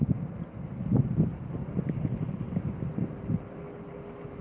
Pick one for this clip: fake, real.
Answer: real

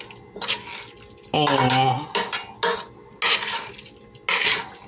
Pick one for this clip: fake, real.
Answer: real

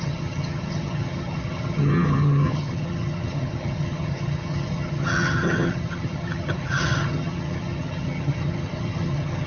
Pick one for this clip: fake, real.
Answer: fake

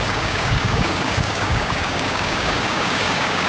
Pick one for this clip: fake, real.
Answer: fake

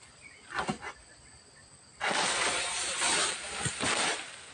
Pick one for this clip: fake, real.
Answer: real